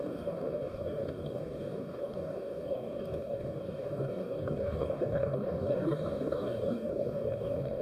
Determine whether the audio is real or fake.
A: fake